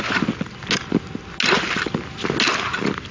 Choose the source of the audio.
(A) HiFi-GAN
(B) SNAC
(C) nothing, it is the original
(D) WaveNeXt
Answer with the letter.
C